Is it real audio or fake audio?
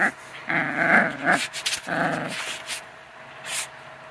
real